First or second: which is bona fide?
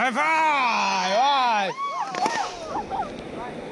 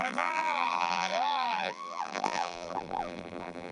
first